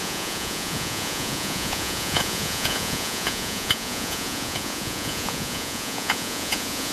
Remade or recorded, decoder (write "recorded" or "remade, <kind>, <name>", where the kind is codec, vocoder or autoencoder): remade, vocoder, Vocos